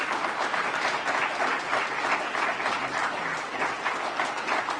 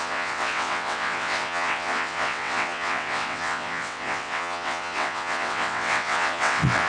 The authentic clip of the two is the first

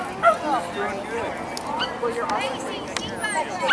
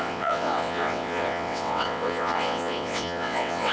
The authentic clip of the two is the first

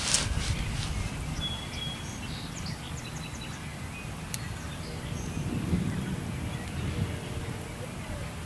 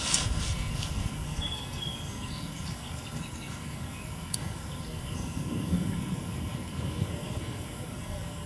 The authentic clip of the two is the first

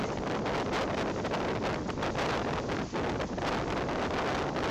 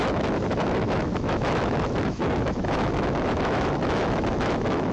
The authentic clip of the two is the first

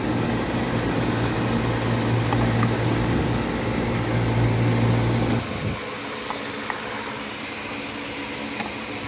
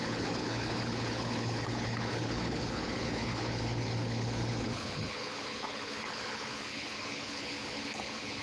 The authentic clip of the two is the first